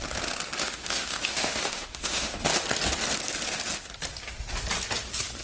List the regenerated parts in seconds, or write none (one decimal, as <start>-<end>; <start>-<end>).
0.6-2.4